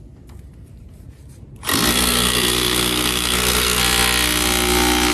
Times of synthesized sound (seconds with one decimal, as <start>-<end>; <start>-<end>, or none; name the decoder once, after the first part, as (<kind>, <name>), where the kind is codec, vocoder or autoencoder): 1.9-3.8 (codec, SNAC)